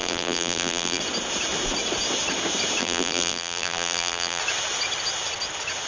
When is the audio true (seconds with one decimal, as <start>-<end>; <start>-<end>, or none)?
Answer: 1.0-2.8; 4.4-5.9